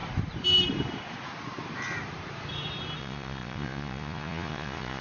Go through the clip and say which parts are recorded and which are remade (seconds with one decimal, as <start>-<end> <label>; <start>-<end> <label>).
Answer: 0.0-3.0 recorded; 3.0-5.0 remade